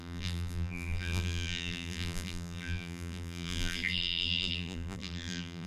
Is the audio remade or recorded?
remade